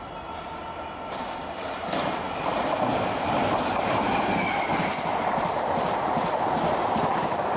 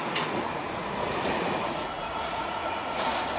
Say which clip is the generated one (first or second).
second